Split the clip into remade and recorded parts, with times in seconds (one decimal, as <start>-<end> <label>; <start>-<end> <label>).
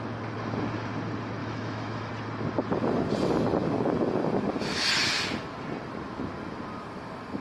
0.0-1.4 recorded; 1.4-2.1 remade; 2.1-7.4 recorded